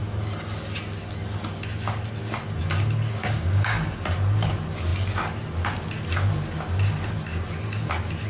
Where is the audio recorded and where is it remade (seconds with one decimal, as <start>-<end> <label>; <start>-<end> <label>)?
0.0-3.2 recorded; 3.2-3.9 remade; 3.9-8.3 recorded